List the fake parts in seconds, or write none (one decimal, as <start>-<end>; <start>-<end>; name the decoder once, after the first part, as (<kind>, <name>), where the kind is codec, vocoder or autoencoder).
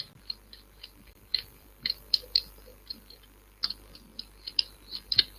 0.0-5.4 (vocoder, BigVGAN v2)